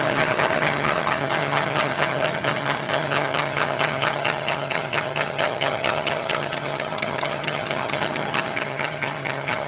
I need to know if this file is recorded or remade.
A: remade